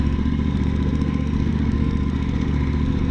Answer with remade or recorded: remade